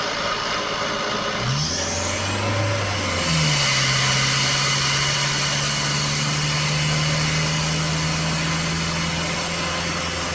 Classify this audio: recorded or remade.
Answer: recorded